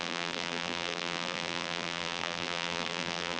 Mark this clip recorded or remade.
remade